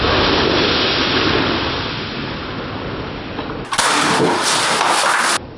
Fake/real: real